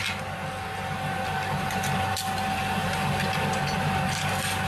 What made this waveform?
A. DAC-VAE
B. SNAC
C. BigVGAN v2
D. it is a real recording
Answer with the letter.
D